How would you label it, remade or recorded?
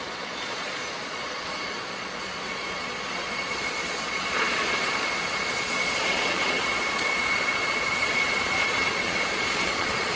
remade